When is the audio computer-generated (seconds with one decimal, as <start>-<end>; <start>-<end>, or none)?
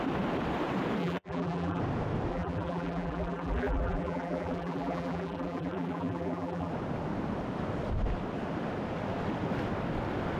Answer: 1.0-1.8; 2.3-6.7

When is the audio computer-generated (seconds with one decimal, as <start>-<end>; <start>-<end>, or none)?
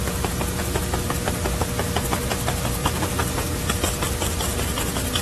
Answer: 2.8-3.7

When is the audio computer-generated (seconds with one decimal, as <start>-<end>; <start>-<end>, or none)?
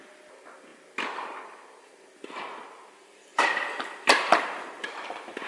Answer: 3.3-4.8